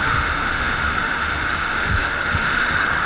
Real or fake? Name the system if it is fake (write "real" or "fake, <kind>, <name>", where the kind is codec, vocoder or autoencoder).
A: fake, autoencoder, DAC-VAE